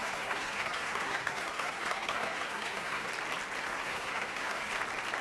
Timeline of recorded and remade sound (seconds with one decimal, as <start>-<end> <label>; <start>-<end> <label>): 0.0-3.1 remade; 3.1-3.6 recorded; 3.6-4.7 remade; 4.7-5.2 recorded